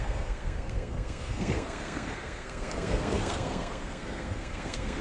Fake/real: fake